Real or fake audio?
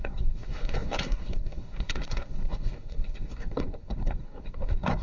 fake